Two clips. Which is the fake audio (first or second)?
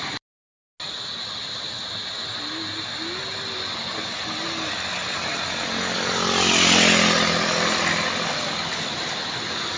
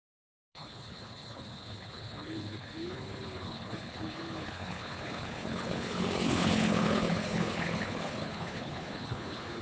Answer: second